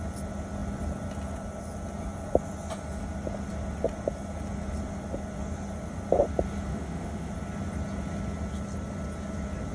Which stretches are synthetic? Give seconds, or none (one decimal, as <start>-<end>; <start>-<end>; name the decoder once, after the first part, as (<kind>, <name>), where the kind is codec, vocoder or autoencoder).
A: 6.7-7.3 (autoencoder, DAC-VAE)